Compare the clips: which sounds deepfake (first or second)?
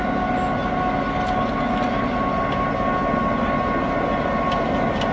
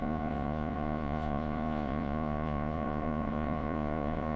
second